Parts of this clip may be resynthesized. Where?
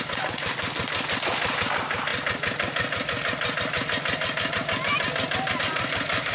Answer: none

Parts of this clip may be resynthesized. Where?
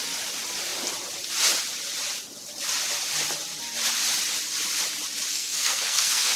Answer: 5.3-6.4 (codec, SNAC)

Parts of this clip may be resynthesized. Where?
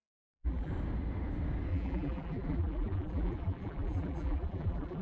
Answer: 0.0-0.7 (vocoder, BigVGAN v2); 1.7-5.0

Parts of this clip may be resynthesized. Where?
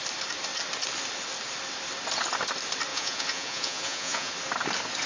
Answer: 2.9-4.3 (vocoder, Vocos)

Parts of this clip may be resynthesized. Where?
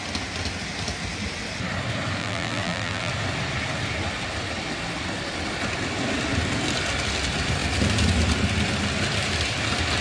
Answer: 2.2-3.1 (vocoder, BigVGAN v2)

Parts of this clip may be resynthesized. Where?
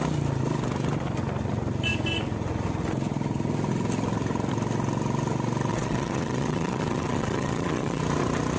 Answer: 5.7-8.0 (vocoder, Vocos)